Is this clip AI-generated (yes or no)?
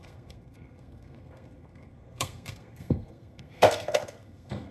yes